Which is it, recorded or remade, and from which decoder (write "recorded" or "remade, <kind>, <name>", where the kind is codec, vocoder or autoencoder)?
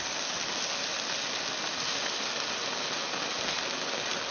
recorded